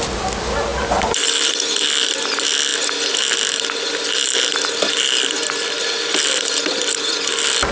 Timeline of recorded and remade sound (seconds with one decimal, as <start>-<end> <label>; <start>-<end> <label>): 0.0-7.7 recorded